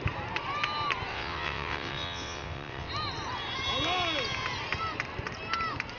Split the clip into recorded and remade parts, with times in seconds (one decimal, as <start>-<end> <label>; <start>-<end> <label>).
0.0-1.1 recorded; 1.1-2.9 remade; 2.9-6.0 recorded